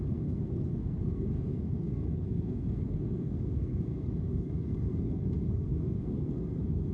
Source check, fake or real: fake